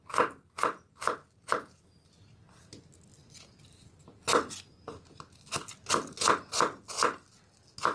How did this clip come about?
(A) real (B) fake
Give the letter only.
A